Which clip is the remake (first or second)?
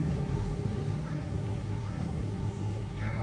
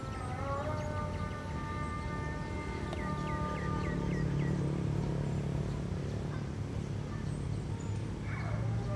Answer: first